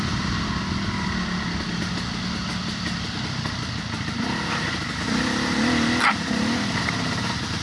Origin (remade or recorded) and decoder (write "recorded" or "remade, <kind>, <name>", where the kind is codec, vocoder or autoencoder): recorded